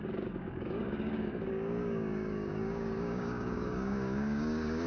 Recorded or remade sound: remade